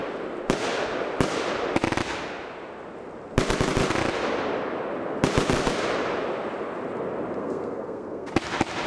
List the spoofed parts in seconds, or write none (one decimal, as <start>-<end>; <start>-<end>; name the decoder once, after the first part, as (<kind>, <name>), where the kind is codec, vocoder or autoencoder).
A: 7.4-8.3 (codec, SNAC)